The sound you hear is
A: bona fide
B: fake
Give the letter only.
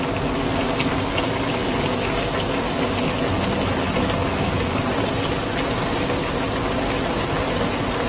A